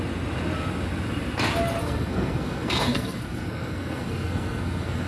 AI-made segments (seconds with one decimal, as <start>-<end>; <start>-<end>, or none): 1.8-5.1